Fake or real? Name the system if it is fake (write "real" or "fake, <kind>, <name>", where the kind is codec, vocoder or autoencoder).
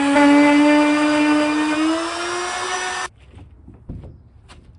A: real